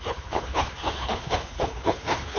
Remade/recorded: remade